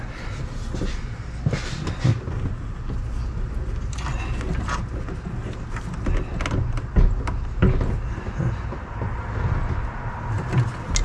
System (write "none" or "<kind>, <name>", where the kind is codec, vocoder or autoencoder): none